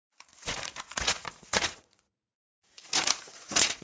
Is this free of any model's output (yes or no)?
no